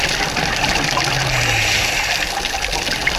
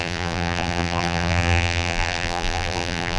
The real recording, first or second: first